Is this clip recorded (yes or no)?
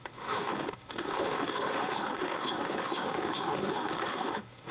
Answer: no